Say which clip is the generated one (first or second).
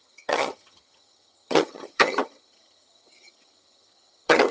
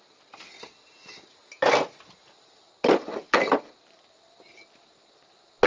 first